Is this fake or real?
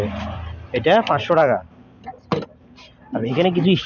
fake